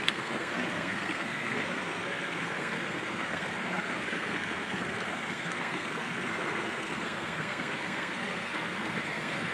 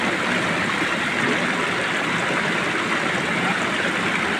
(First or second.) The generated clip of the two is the first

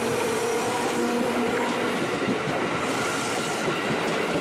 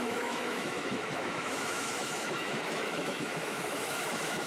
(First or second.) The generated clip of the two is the second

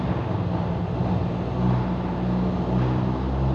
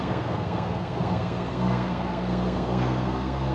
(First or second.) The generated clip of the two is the second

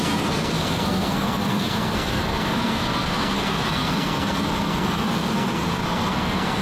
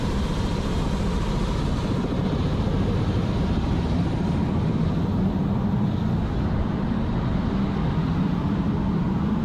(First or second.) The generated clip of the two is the first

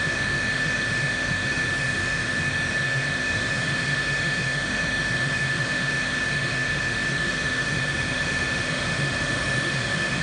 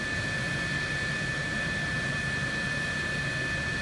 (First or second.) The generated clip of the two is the first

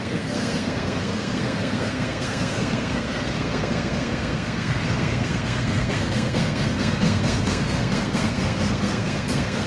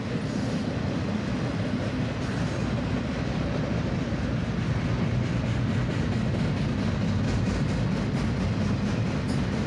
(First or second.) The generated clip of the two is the first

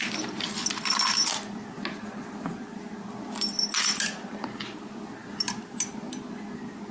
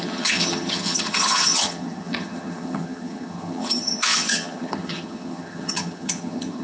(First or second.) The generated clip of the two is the second